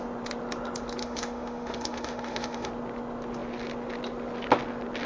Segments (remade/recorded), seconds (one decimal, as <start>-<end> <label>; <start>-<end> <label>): 0.0-1.0 recorded; 1.0-2.7 remade; 2.7-5.1 recorded

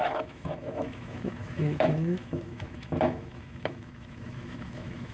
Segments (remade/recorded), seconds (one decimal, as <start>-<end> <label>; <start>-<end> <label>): 0.0-5.1 remade

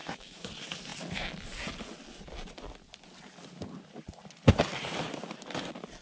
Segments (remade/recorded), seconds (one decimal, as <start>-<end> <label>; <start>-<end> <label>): 0.0-0.5 remade; 0.5-6.0 recorded

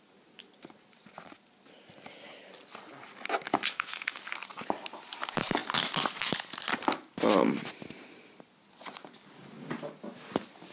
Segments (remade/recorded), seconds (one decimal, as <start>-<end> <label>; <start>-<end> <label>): 0.0-3.7 recorded; 3.7-4.2 remade; 4.2-10.7 recorded

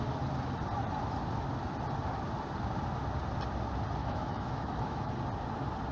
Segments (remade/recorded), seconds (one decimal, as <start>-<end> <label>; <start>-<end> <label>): 0.0-4.0 recorded; 4.0-5.1 remade; 5.1-5.9 recorded

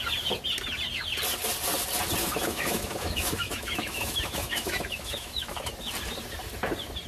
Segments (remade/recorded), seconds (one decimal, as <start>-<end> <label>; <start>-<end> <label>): 0.0-2.2 recorded; 2.2-5.7 remade; 5.7-7.1 recorded